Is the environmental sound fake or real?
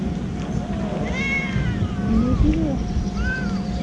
real